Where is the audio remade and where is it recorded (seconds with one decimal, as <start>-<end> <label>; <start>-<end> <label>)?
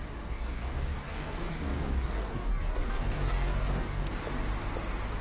0.0-4.0 remade; 4.0-5.2 recorded